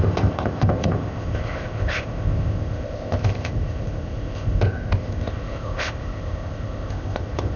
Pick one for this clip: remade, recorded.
remade